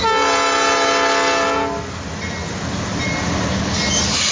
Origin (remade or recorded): recorded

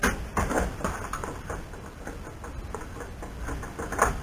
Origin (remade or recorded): recorded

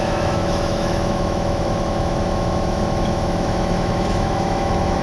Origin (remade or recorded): remade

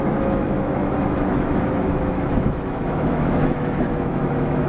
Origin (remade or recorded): remade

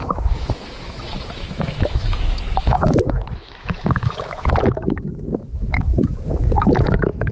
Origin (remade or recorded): remade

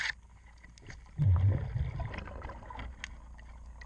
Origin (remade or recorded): recorded